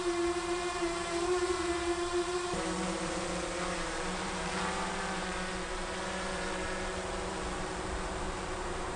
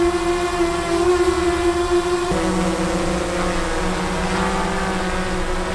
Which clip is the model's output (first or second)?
first